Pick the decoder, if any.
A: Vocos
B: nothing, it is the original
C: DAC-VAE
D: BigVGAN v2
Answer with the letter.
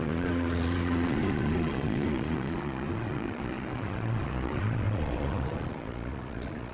A